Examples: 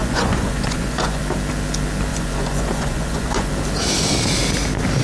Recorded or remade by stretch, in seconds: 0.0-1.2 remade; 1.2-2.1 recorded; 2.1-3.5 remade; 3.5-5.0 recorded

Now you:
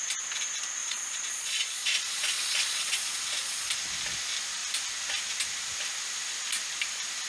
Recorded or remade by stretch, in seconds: 0.0-0.8 recorded; 0.8-3.7 remade; 3.7-7.3 recorded

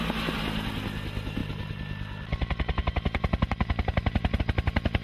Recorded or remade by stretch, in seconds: 0.0-5.0 recorded

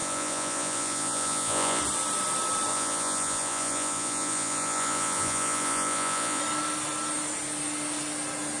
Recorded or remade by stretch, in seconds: 0.0-1.8 remade; 1.8-2.7 recorded; 2.7-6.4 remade; 6.4-8.6 recorded

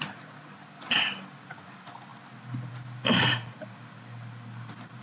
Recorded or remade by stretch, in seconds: 0.0-5.0 recorded

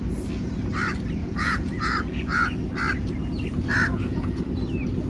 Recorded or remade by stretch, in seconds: 0.0-1.2 recorded; 1.2-2.6 remade; 2.6-3.9 recorded; 3.9-4.5 remade; 4.5-5.1 recorded

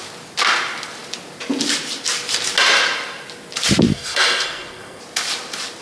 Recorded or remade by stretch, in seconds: 0.0-3.9 recorded; 3.9-5.0 remade; 5.0-5.8 recorded

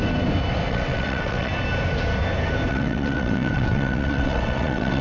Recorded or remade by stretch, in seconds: 0.0-0.7 recorded; 0.7-1.5 remade; 1.5-2.7 recorded; 2.7-5.0 remade